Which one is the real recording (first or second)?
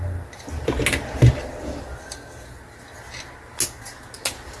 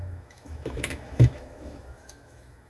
first